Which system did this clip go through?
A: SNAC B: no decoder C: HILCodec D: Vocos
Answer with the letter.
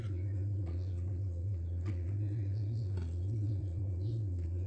D